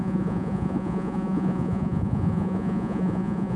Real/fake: fake